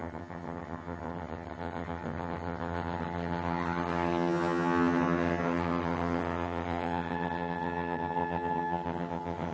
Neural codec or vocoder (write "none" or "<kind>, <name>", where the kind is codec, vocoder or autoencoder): vocoder, HiFi-GAN